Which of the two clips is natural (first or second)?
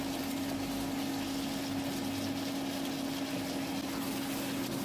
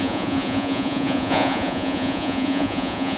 first